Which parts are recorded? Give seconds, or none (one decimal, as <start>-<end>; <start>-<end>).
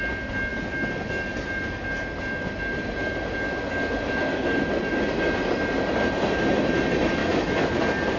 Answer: 0.0-7.2; 7.7-8.2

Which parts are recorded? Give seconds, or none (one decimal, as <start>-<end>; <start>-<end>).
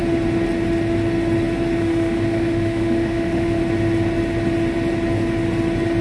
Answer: 0.0-1.8; 3.6-6.0